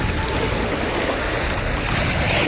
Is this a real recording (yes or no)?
yes